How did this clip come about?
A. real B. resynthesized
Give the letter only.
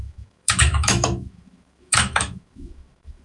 B